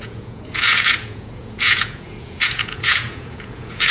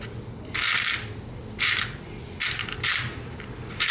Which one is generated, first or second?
first